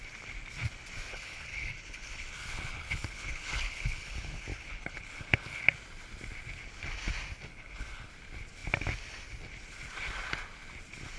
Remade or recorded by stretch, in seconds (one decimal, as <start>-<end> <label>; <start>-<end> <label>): 0.0-1.1 recorded; 1.1-5.6 remade; 5.6-7.5 recorded; 7.5-8.1 remade; 8.1-11.2 recorded